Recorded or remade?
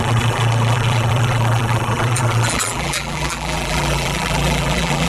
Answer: remade